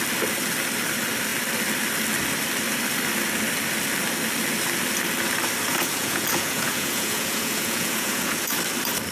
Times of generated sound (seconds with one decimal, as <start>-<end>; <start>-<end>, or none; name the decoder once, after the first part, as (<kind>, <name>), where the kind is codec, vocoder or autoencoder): 5.7-8.6 (vocoder, Vocos)